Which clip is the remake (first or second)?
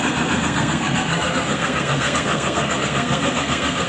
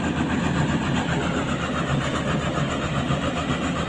first